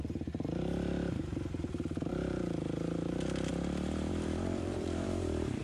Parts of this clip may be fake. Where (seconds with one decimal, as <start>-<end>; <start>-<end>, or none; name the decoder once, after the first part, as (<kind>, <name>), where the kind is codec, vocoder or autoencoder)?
0.0-1.3 (vocoder, BigVGAN v2); 2.1-3.5; 4.1-5.6

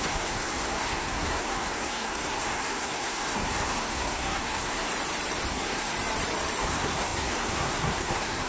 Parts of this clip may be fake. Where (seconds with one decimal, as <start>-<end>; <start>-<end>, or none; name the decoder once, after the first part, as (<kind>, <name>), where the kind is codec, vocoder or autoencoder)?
0.0-4.9 (codec, SNAC); 5.5-5.9; 6.6-8.5

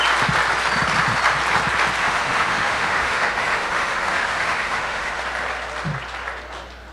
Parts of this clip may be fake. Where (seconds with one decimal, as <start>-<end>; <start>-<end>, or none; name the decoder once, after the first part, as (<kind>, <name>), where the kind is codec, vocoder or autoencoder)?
2.0-5.2 (autoencoder, DAC-VAE)

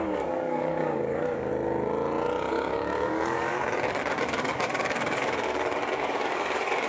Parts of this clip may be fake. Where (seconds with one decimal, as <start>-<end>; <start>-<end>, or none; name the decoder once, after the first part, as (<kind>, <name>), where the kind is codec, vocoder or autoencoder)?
0.0-1.5 (codec, DAC); 2.5-6.9

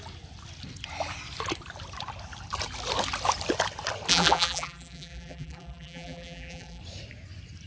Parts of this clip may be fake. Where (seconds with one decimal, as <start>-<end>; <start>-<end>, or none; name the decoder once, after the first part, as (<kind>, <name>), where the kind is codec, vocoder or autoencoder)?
4.1-6.8 (vocoder, BigVGAN v2)

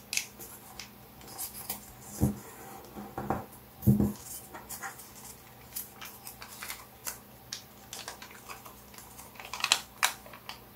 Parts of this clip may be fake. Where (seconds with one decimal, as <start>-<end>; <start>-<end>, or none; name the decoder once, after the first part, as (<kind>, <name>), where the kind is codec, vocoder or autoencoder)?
7.0-7.7 (vocoder, BigVGAN v2)

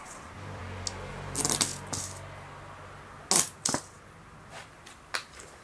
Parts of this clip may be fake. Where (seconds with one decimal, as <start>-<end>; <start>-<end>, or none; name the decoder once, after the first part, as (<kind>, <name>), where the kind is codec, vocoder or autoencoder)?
0.0-0.6 (vocoder, BigVGAN v2); 1.1-1.7; 5.1-5.6

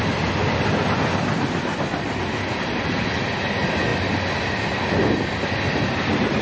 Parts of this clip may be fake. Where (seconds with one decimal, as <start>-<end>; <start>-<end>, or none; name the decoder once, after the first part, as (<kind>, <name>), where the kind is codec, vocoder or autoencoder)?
none